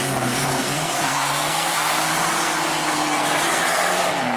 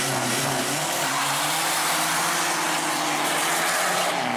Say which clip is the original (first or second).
second